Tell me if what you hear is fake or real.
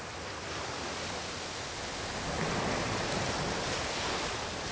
real